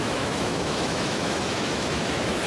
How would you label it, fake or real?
fake